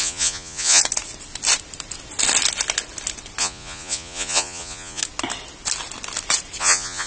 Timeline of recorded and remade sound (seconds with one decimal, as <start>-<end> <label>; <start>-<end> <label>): 0.0-0.8 remade; 0.8-3.4 recorded; 3.4-5.0 remade; 5.0-6.6 recorded; 6.6-7.1 remade